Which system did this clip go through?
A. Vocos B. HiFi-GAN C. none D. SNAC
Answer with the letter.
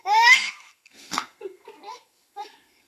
D